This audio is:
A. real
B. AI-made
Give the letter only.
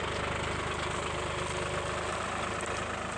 A